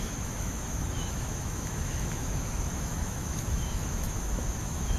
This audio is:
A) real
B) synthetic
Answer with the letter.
B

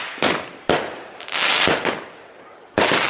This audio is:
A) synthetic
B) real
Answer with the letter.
B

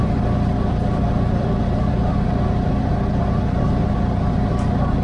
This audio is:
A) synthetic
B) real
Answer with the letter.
A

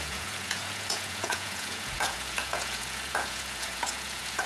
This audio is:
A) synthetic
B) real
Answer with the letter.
A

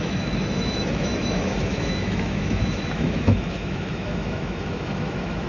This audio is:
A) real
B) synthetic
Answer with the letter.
B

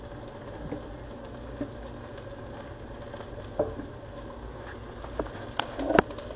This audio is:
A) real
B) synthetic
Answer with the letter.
A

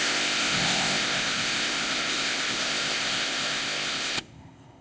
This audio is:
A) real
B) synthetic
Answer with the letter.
B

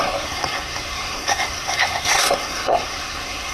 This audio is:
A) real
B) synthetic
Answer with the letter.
B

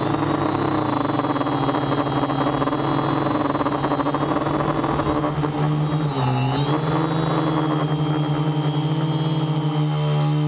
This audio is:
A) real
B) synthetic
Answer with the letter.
A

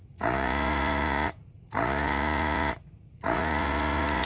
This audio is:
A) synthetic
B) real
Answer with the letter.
A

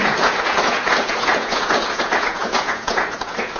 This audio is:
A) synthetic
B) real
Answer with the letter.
A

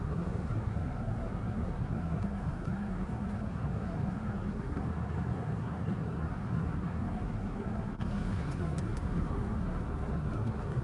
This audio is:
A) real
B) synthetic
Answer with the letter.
B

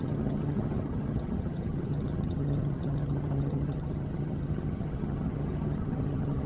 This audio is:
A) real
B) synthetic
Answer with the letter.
B